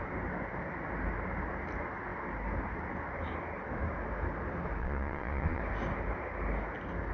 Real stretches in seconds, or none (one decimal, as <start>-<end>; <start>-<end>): 0.0-4.8; 5.6-7.1